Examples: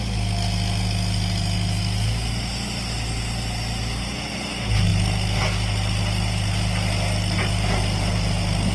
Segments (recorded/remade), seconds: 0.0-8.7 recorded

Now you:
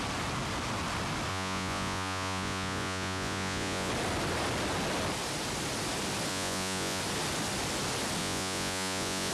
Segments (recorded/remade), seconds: 0.0-1.3 recorded; 1.3-3.9 remade; 3.9-6.3 recorded; 6.3-7.0 remade; 7.0-8.2 recorded; 8.2-9.3 remade

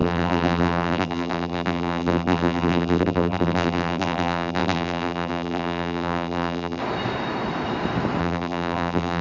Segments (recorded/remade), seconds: 0.0-6.8 remade; 6.8-8.2 recorded; 8.2-9.2 remade

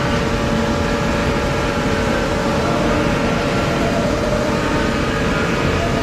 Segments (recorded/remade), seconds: 0.0-1.2 recorded; 1.2-4.8 remade; 4.8-6.0 recorded

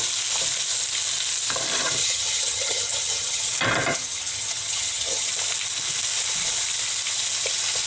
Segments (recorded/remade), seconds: 0.0-2.0 recorded; 2.0-3.5 remade; 3.5-3.9 recorded; 3.9-5.3 remade; 5.3-7.9 recorded

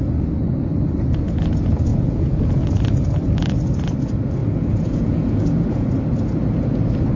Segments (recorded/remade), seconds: 0.0-1.9 recorded; 1.9-2.6 remade; 2.6-4.4 recorded; 4.4-5.9 remade; 5.9-7.2 recorded

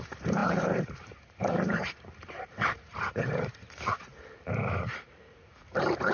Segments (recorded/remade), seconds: 0.0-6.1 remade

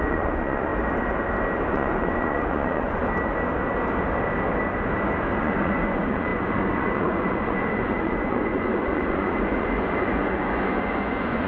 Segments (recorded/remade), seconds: 0.0-0.7 remade; 0.7-1.7 recorded; 1.7-3.0 remade; 3.0-5.4 recorded; 5.4-11.5 remade